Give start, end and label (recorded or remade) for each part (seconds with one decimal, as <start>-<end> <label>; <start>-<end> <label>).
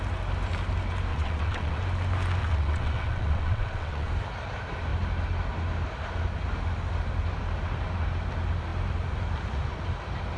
0.0-1.1 recorded; 1.1-1.8 remade; 1.8-2.4 recorded; 2.4-4.1 remade; 4.1-10.4 recorded